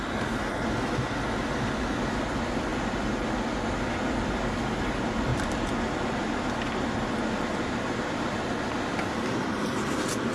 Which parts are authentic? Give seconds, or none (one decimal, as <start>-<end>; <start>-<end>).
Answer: 0.0-2.7; 3.9-5.3; 8.4-10.3